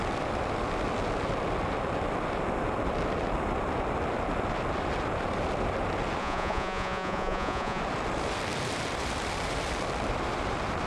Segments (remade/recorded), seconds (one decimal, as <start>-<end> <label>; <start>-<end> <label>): 0.0-6.2 recorded; 6.2-7.8 remade; 7.8-10.9 recorded